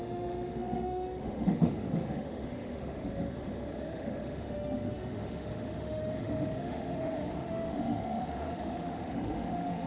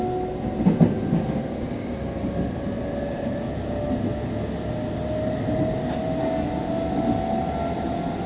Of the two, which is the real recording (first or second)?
second